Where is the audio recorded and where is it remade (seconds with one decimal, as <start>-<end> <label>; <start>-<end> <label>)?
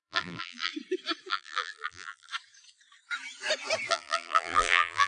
0.0-0.7 remade; 0.7-1.3 recorded; 1.3-2.3 remade; 2.3-3.9 recorded; 3.9-5.1 remade